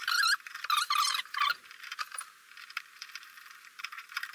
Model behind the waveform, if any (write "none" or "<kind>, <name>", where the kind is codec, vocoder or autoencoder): vocoder, BigVGAN v2